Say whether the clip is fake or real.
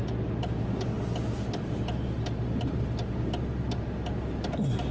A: real